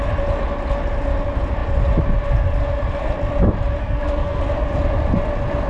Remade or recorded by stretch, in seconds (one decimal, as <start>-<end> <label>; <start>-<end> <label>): 0.0-3.8 recorded; 3.8-4.4 remade; 4.4-5.7 recorded